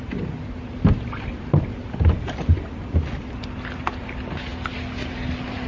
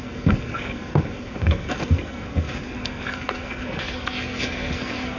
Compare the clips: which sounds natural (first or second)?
first